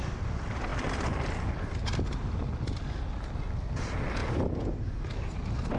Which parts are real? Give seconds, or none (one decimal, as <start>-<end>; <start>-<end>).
0.0-5.8